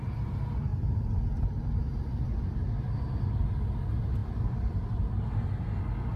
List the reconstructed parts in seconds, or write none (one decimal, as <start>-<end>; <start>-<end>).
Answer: 0.7-2.7; 4.2-5.3